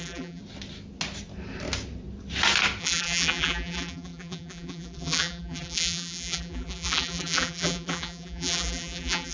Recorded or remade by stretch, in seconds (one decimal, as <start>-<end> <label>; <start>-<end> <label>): 0.0-0.4 remade; 0.4-2.8 recorded; 2.8-9.3 remade